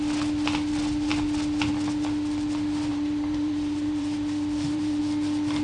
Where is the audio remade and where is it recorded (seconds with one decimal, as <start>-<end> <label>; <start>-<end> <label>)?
0.0-2.9 recorded; 2.9-5.0 remade; 5.0-5.6 recorded